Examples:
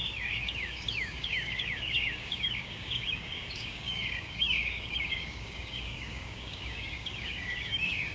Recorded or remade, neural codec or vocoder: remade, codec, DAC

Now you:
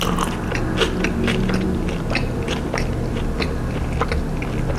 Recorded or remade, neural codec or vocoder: recorded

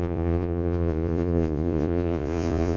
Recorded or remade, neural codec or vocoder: remade, vocoder, Vocos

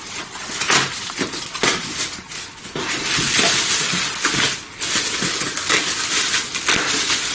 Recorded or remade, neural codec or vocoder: recorded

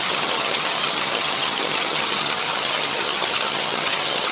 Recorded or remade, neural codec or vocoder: remade, vocoder, HiFi-GAN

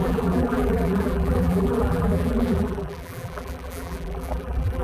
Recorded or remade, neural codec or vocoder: remade, vocoder, BigVGAN v2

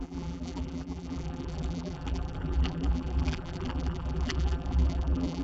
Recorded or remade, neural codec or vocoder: remade, vocoder, BigVGAN v2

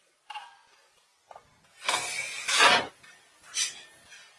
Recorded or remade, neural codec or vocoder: recorded